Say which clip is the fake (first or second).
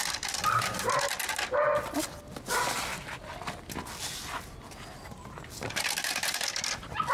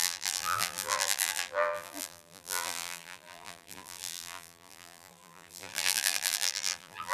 second